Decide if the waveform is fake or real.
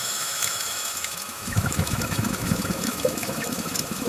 fake